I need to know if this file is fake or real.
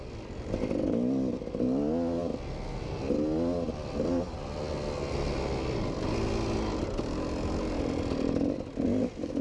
real